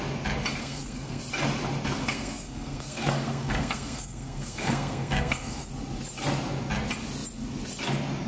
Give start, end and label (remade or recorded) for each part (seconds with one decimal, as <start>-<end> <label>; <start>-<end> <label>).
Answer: 0.0-0.6 recorded; 0.6-1.2 remade; 1.2-2.0 recorded; 2.0-5.7 remade; 5.7-8.3 recorded